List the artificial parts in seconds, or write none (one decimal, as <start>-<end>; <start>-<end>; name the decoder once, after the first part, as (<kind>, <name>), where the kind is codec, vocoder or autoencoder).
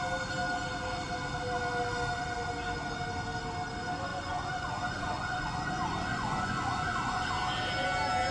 4.1-7.3 (vocoder, Vocos)